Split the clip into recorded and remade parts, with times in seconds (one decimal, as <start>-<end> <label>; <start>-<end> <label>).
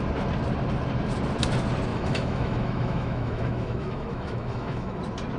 0.0-1.9 recorded; 1.9-5.0 remade; 5.0-5.4 recorded